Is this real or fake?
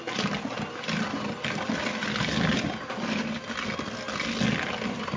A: real